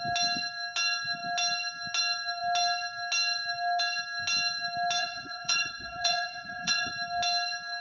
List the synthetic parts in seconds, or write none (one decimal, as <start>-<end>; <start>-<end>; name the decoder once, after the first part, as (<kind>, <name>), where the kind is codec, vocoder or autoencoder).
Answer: 5.0-6.9 (vocoder, Vocos)